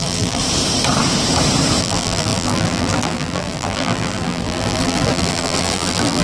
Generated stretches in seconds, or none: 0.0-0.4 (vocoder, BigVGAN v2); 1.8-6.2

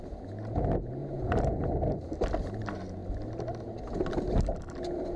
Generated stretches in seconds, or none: 1.0-1.7 (vocoder, BigVGAN v2)

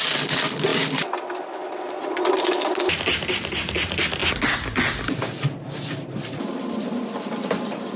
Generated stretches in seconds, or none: none

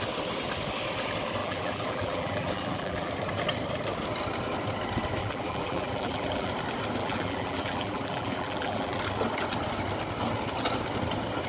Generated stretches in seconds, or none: 1.4-3.1 (vocoder, BigVGAN v2); 5.2-6.5; 7.0-9.0

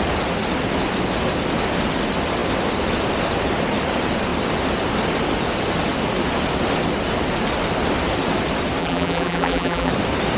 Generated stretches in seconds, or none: 8.8-9.9 (vocoder, BigVGAN v2)

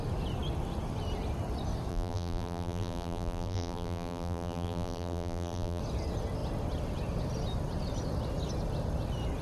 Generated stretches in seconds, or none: 1.9-5.8 (vocoder, BigVGAN v2)

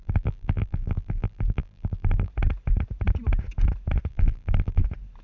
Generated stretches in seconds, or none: 0.0-2.3 (vocoder, BigVGAN v2); 4.1-4.8

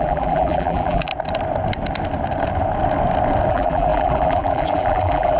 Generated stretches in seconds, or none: 0.0-1.1 (vocoder, BigVGAN v2); 3.5-5.4